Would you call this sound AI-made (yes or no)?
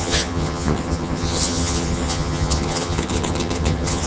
yes